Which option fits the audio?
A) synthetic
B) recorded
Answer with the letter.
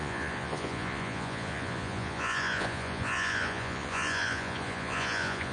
A